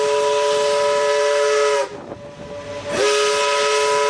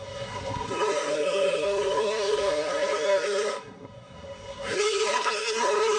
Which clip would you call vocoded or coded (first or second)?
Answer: second